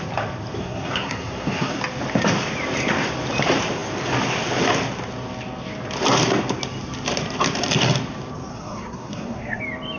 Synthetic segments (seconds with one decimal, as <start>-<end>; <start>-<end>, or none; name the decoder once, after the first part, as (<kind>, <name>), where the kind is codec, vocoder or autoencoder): 0.6-1.8 (codec, SNAC); 8.5-9.6